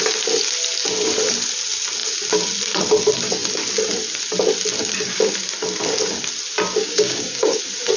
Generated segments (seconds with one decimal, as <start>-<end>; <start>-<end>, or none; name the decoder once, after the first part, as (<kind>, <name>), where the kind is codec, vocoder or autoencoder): 6.8-7.6 (codec, DAC)